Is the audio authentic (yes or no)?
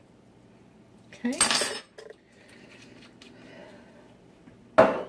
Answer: yes